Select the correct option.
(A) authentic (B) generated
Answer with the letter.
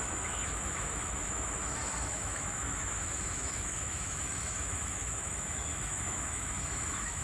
B